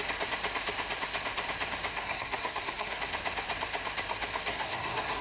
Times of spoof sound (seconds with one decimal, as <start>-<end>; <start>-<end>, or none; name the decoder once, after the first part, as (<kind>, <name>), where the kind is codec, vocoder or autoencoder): 1.9-3.0 (codec, SNAC); 4.5-5.2